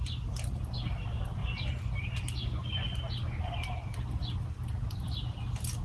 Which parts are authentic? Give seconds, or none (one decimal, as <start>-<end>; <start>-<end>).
0.0-5.8